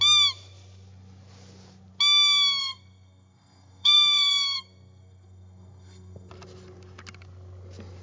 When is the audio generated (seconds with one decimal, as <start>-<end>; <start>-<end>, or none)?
2.6-6.3

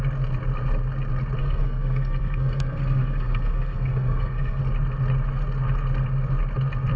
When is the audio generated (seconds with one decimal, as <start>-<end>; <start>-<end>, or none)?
1.4-4.6

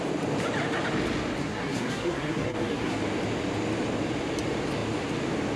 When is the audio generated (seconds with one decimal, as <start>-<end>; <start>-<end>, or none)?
1.4-3.0

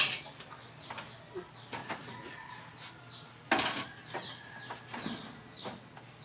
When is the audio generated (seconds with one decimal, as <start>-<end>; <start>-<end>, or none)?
none

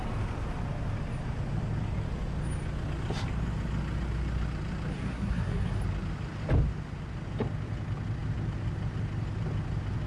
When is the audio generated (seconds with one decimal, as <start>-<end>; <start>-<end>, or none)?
4.9-5.8